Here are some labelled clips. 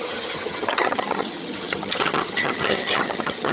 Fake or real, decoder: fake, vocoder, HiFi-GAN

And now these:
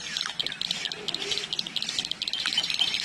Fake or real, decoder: real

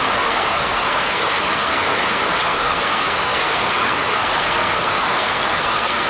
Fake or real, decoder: fake, codec, SNAC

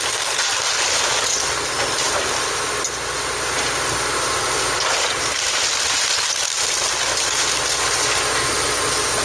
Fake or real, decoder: real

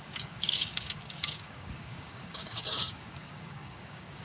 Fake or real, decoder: fake, codec, DAC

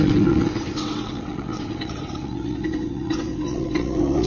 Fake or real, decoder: fake, vocoder, WaveNeXt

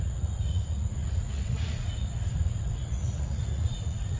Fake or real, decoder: fake, vocoder, Vocos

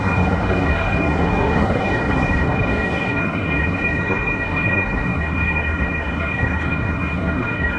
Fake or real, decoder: fake, codec, SNAC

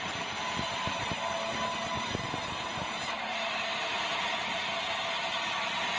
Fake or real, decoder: real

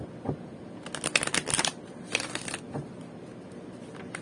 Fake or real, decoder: real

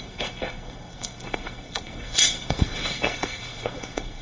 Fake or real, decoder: fake, codec, SNAC